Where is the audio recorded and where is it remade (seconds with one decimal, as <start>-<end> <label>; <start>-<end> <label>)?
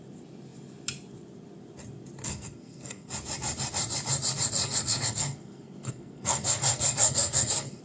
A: 0.0-2.2 recorded; 2.2-3.1 remade; 3.1-4.6 recorded; 4.6-7.8 remade